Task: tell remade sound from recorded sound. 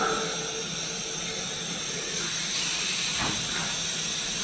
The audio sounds recorded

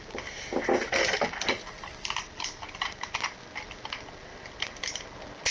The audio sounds recorded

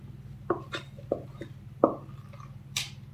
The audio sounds remade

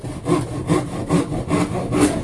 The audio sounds recorded